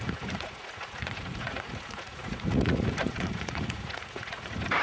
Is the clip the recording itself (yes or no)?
no